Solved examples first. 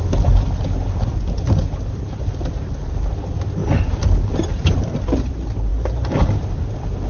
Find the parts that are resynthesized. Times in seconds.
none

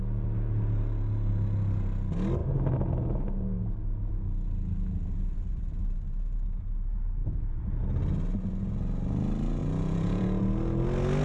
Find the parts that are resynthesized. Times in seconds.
7.2-7.8; 9.6-10.4